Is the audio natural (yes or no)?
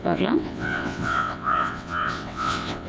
no